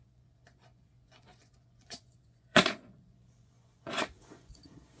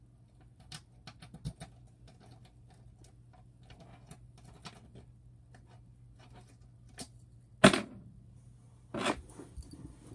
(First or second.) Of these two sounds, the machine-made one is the first